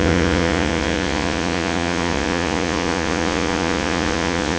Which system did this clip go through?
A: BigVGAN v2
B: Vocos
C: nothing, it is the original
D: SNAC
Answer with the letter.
B